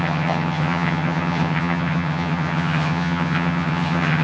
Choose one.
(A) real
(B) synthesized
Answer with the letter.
B